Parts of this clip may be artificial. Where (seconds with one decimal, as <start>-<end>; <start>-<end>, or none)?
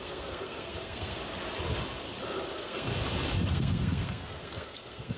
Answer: 0.0-1.2; 2.5-2.9; 3.5-5.2